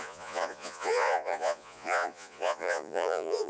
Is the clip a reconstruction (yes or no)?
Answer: yes